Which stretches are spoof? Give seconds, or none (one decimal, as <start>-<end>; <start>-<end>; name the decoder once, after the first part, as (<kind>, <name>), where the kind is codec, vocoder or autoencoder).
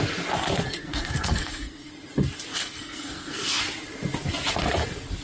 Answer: 0.8-1.9 (codec, SNAC); 2.5-3.6